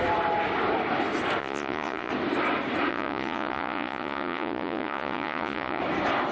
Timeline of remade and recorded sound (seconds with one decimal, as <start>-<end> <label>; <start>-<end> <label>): 0.0-1.4 recorded; 1.4-2.1 remade; 2.1-2.9 recorded; 2.9-5.8 remade; 5.8-6.3 recorded